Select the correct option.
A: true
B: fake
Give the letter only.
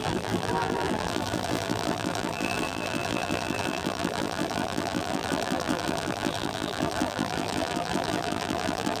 B